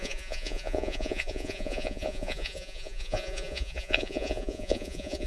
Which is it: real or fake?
fake